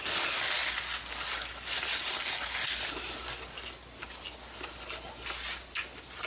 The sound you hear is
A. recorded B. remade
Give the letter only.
A